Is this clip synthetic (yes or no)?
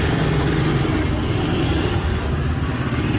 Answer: no